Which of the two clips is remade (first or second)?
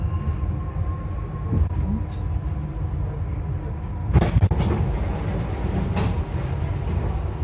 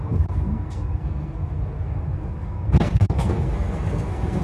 second